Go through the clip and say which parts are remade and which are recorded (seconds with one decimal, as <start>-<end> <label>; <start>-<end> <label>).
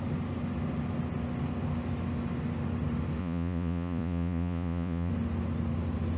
0.0-3.2 recorded; 3.2-5.1 remade; 5.1-6.2 recorded